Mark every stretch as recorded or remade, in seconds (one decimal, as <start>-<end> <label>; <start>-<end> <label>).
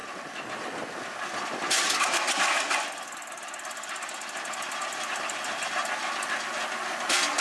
0.0-7.4 recorded